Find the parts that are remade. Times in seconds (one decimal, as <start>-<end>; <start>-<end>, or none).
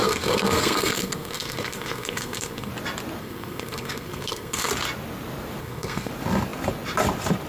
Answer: 0.0-2.7; 3.2-4.7; 5.6-6.1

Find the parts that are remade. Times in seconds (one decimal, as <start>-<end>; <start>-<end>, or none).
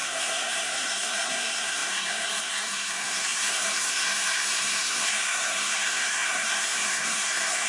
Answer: 0.0-7.7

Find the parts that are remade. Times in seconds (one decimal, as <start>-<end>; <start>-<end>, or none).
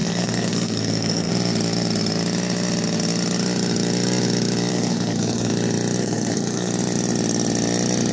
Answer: 0.0-1.3; 4.7-5.5; 6.0-6.7